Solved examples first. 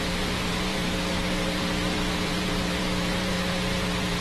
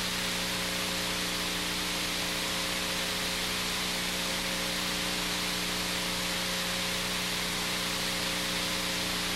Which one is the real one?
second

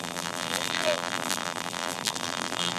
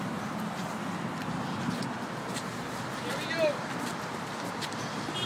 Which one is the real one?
second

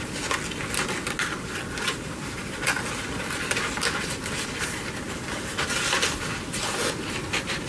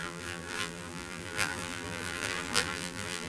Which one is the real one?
first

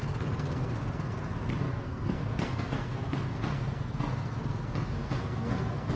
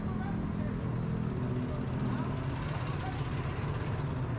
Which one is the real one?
second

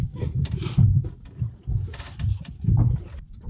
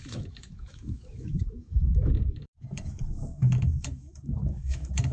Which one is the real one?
first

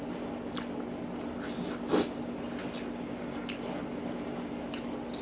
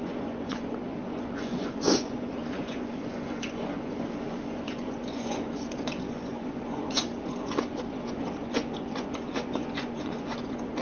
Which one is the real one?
first